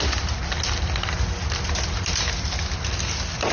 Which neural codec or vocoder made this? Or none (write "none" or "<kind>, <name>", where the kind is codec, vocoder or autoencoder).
none